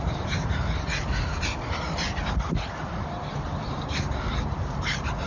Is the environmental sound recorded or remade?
remade